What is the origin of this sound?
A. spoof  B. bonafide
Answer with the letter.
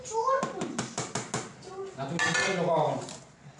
B